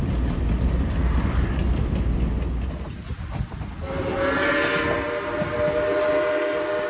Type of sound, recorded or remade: recorded